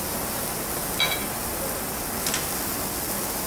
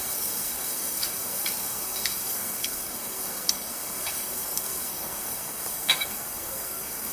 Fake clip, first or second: second